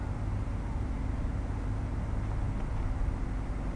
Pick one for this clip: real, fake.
real